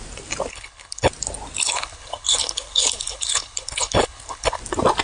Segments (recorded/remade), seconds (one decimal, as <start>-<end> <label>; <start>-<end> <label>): 0.0-0.5 recorded; 0.5-1.1 remade; 1.1-1.6 recorded; 1.6-4.6 remade; 4.6-5.0 recorded